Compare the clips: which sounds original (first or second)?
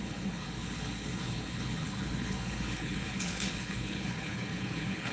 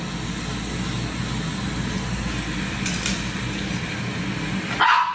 second